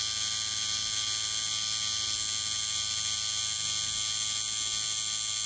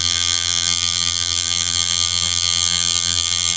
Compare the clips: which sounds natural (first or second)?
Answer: first